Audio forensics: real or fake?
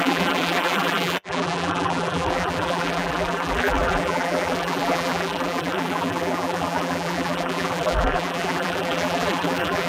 fake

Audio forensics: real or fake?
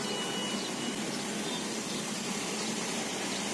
real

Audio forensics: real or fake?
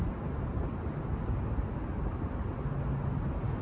real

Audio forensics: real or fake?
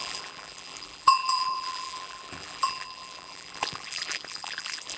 fake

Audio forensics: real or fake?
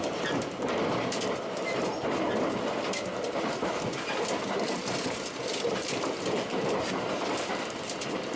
fake